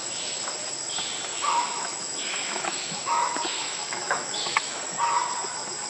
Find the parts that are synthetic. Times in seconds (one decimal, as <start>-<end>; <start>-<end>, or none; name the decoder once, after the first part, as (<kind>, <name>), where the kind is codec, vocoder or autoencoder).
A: 0.0-0.5 (autoencoder, DAC-VAE); 1.3-4.8